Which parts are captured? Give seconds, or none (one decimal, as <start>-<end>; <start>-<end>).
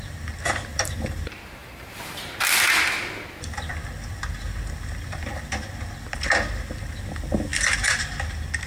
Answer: 0.0-0.7; 1.2-1.6; 2.6-8.7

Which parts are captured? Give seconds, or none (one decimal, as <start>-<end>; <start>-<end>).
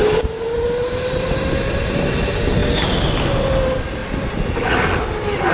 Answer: 0.0-5.5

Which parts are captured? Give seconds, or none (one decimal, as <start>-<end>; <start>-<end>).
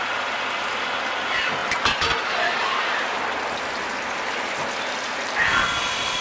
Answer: 0.0-6.2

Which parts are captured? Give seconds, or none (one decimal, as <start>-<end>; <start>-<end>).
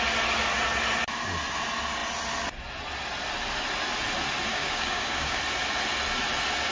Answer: 0.0-4.5; 5.4-6.7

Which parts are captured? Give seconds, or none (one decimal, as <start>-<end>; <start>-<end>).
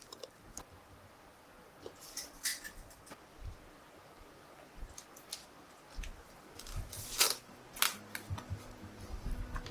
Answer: 0.0-9.7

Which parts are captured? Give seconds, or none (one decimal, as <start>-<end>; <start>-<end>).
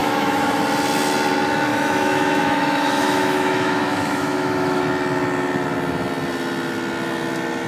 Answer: 0.6-1.7; 4.8-7.7